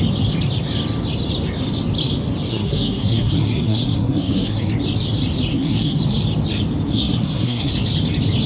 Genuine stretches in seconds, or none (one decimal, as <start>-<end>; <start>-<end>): 0.0-2.5; 4.7-5.5; 6.0-6.9; 7.7-8.5